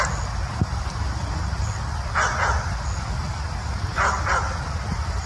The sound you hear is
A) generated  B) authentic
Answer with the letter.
B